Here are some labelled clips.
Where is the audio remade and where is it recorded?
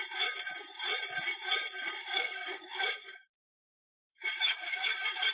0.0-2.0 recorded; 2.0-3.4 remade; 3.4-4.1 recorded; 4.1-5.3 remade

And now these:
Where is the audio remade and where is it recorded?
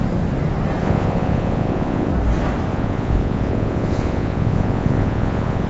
0.0-0.8 recorded; 0.8-2.1 remade; 2.1-2.7 recorded; 2.7-5.7 remade